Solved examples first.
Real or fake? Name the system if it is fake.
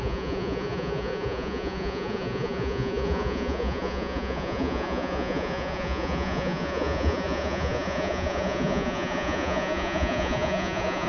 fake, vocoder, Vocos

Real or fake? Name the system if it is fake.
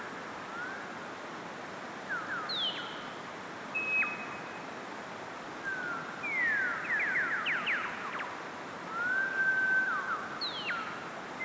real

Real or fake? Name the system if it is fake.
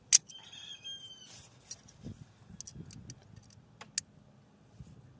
real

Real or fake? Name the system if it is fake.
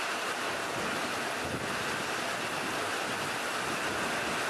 real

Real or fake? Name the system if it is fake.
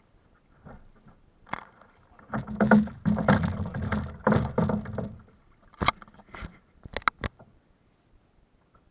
real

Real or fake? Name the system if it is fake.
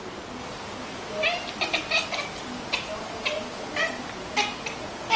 real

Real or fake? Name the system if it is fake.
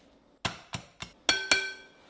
real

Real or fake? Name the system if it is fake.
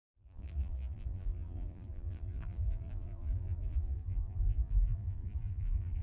fake, vocoder, BigVGAN v2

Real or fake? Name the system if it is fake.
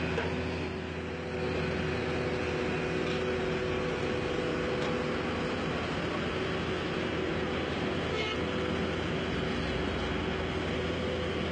real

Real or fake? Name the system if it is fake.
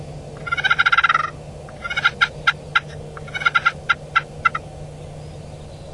real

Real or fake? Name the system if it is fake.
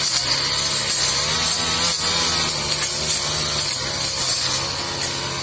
real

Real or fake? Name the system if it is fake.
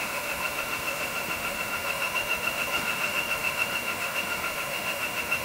fake, autoencoder, DAC-VAE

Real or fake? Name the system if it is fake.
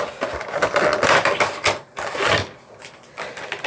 real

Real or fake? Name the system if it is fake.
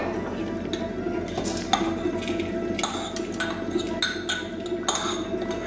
real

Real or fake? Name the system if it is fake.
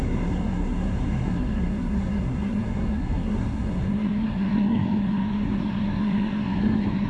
fake, codec, SNAC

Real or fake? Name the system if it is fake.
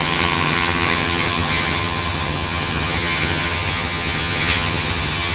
fake, vocoder, HiFi-GAN